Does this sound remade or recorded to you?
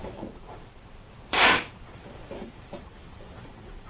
remade